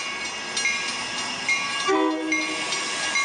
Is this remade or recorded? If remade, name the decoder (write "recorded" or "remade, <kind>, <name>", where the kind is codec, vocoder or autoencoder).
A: recorded